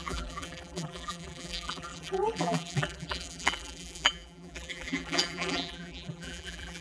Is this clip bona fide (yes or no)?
no